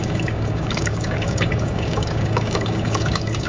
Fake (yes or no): yes